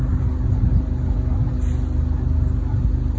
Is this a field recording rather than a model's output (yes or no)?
yes